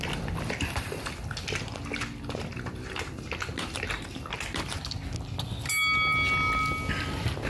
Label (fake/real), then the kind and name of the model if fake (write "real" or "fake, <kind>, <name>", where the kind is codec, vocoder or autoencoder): real